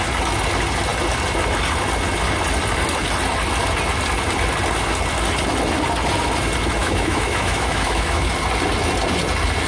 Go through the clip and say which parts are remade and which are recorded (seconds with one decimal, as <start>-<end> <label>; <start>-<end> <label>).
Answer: 0.0-6.8 recorded; 6.8-8.3 remade; 8.3-9.7 recorded